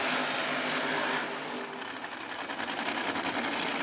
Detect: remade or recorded recorded